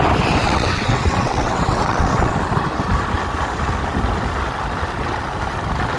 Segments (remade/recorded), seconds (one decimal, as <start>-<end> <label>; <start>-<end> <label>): 0.0-0.4 recorded; 0.4-2.3 remade; 2.3-6.0 recorded